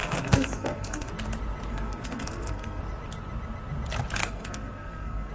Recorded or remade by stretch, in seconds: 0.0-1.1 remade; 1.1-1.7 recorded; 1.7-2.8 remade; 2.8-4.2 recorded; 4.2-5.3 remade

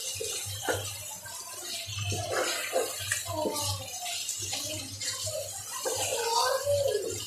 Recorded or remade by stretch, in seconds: 0.0-7.3 recorded